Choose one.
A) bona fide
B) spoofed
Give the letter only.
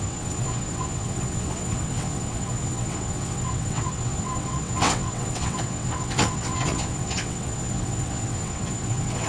B